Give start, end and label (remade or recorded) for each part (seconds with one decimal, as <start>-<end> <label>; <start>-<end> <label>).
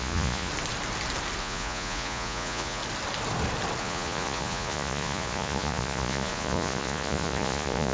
0.0-0.5 remade; 0.5-1.4 recorded; 1.4-2.8 remade; 2.8-3.8 recorded; 3.8-7.9 remade